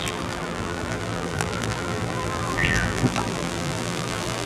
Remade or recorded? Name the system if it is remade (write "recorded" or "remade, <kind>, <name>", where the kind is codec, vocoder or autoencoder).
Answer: remade, vocoder, BigVGAN v2